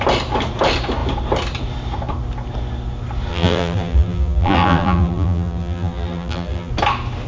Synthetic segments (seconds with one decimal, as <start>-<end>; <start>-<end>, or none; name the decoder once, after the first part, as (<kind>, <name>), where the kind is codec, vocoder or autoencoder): 3.3-6.7 (vocoder, BigVGAN v2)